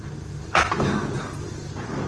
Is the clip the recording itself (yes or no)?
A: no